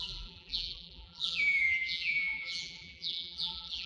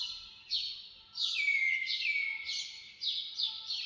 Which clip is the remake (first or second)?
first